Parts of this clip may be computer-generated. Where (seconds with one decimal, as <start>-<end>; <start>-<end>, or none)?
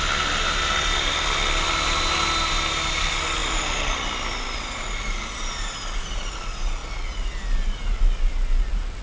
none